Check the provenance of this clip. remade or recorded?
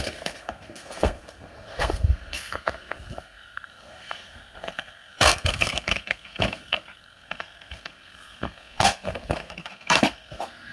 remade